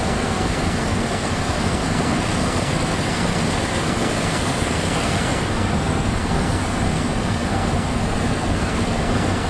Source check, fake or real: fake